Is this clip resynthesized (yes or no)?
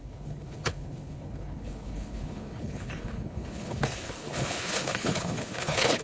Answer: yes